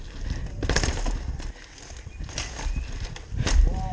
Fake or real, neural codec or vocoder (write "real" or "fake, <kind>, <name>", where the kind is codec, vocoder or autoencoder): real